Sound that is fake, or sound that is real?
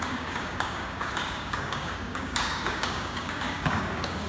fake